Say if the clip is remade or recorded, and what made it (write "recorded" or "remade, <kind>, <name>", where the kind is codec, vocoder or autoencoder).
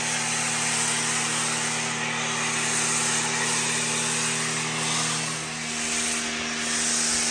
recorded